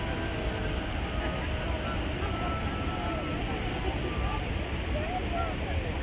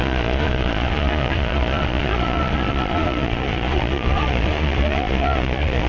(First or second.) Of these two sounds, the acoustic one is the first